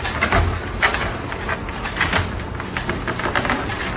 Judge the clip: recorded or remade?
recorded